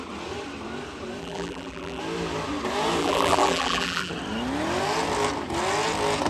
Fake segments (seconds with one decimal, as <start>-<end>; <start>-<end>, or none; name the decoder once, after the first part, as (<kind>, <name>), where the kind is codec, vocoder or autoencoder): 1.2-2.0 (vocoder, BigVGAN v2); 3.0-4.1